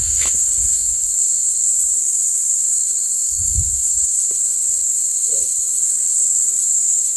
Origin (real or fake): fake